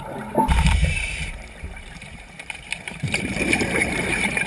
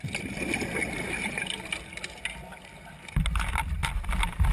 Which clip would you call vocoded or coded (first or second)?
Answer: first